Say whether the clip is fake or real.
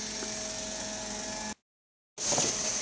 real